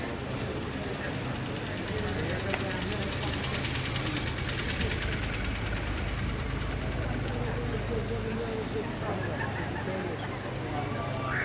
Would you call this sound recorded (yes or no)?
yes